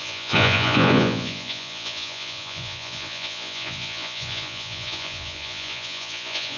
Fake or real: fake